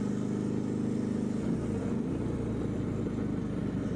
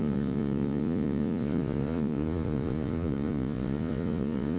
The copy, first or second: second